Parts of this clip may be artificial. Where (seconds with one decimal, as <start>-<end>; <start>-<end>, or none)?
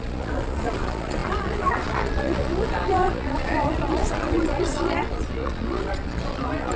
0.0-6.8